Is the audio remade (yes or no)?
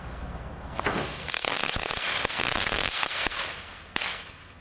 yes